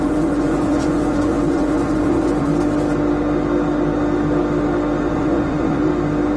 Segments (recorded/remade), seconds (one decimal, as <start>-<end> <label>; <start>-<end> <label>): 0.0-2.5 remade; 2.5-5.1 recorded; 5.1-5.9 remade; 5.9-6.4 recorded

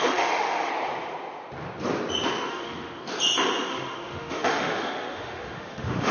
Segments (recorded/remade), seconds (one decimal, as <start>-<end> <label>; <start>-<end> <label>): 0.0-0.7 remade; 0.7-2.5 recorded; 2.5-3.0 remade; 3.0-3.7 recorded; 3.7-6.1 remade